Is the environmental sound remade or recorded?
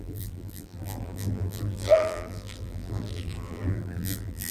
remade